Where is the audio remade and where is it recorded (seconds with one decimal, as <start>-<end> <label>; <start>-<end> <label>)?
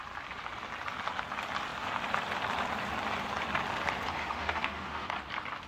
0.0-4.2 recorded; 4.2-5.1 remade; 5.1-5.7 recorded